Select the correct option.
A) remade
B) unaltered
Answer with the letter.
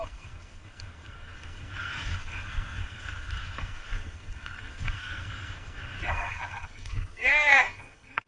A